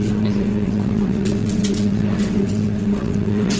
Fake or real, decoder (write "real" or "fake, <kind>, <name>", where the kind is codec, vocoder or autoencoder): fake, vocoder, WaveNeXt